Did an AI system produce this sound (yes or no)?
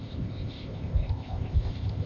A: yes